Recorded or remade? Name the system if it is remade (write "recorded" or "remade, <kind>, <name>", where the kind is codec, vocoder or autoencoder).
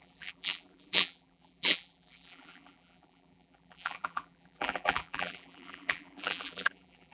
remade, vocoder, BigVGAN v2